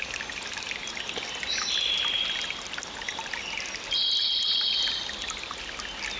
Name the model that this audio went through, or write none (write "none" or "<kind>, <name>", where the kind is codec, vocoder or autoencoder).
none